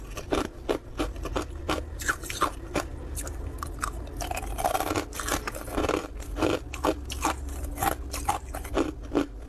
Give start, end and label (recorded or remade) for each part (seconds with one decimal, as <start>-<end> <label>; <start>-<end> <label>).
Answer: 0.0-9.5 recorded